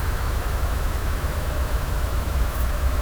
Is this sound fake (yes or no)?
yes